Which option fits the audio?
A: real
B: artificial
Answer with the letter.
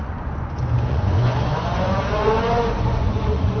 B